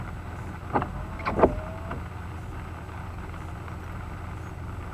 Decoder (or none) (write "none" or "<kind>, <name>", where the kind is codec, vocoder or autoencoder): none